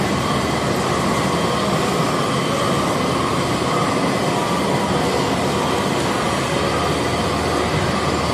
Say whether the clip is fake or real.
real